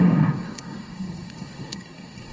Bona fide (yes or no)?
no